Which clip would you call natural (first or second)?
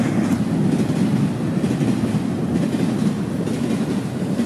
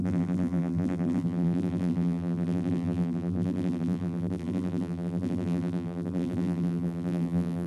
first